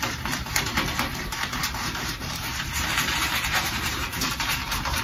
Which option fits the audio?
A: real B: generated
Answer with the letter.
B